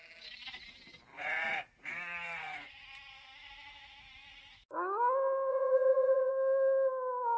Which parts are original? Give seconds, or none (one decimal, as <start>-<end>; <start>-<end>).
0.0-1.1; 2.7-5.5; 6.3-7.4